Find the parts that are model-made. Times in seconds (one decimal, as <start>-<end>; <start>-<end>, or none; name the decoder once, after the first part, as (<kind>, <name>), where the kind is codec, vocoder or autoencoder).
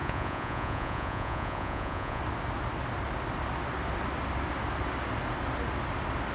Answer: 0.0-2.2 (vocoder, Vocos)